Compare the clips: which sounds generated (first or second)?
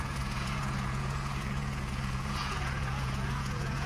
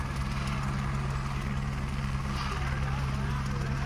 first